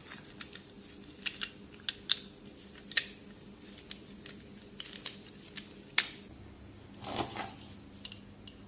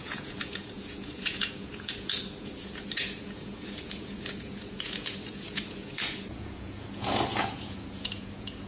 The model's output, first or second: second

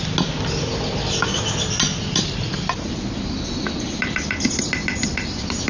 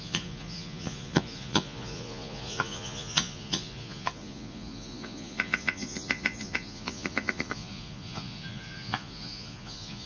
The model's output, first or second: second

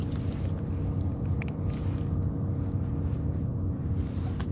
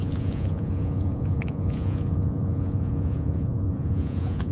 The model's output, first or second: second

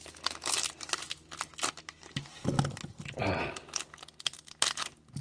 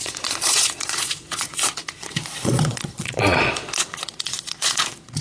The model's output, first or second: second